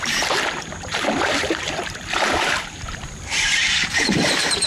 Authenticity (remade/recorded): remade